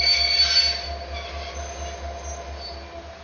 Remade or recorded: recorded